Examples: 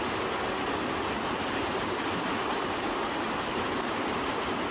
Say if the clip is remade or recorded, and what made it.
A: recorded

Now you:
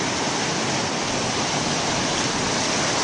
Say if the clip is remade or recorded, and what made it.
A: recorded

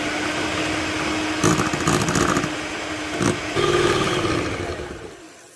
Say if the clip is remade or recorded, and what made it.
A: recorded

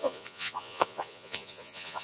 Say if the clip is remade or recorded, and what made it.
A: remade, vocoder, Vocos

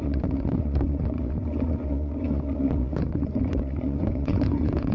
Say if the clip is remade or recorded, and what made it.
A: remade, vocoder, Vocos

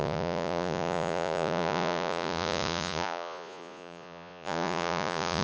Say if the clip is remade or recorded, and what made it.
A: remade, vocoder, Vocos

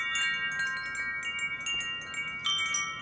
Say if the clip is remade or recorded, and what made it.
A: recorded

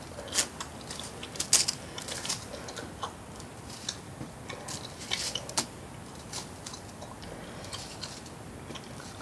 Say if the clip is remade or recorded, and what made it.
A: recorded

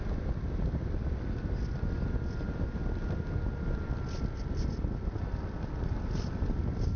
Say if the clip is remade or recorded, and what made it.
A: recorded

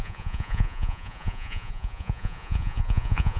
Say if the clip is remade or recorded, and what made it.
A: remade, vocoder, Vocos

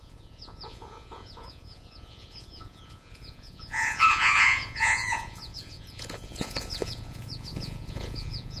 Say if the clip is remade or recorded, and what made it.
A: remade, vocoder, Vocos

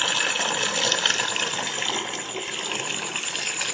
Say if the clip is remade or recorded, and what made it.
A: recorded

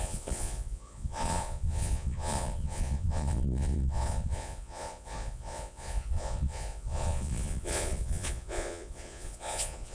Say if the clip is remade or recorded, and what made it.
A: remade, vocoder, Vocos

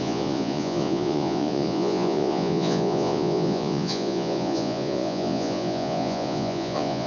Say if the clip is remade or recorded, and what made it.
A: remade, vocoder, Vocos